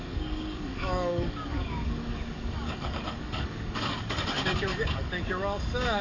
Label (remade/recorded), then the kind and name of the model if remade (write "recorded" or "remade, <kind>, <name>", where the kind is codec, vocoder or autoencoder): remade, codec, DAC